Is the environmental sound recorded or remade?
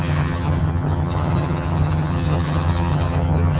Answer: remade